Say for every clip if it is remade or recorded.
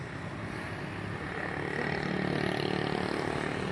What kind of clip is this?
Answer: recorded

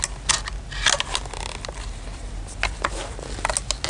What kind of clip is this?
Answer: recorded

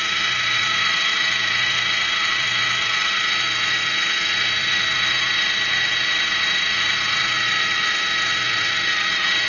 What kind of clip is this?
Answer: remade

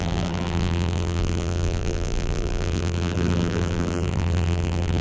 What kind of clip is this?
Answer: remade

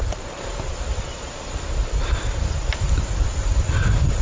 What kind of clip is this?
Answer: recorded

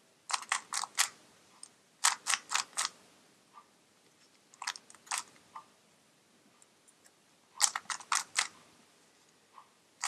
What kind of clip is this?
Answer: recorded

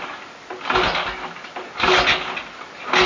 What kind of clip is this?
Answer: recorded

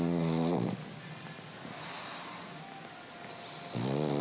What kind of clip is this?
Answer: recorded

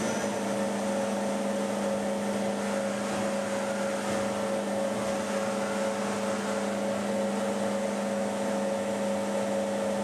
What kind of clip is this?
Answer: recorded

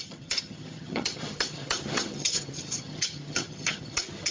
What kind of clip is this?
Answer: remade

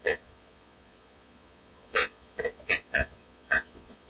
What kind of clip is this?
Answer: remade